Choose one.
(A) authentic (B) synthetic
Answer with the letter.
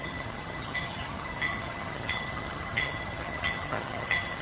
B